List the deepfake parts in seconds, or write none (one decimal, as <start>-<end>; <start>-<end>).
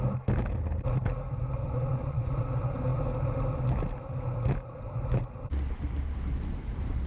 1.6-2.4